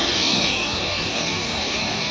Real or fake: fake